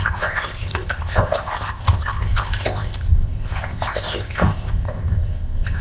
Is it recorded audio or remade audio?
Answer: remade